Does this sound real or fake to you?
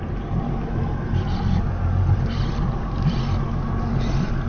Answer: real